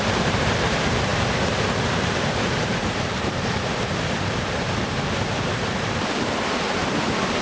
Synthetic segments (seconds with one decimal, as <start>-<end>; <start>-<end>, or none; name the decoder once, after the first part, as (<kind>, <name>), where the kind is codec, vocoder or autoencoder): 0.0-7.4 (vocoder, BigVGAN v2)